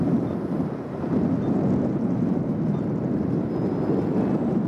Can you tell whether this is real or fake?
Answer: real